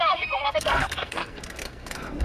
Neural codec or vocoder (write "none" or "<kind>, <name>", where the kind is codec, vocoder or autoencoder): codec, SNAC